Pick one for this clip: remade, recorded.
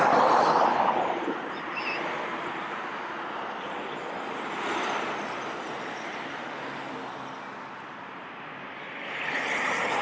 recorded